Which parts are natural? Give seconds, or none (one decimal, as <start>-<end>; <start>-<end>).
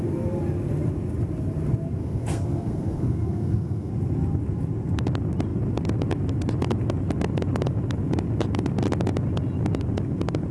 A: 0.0-2.0; 3.9-10.5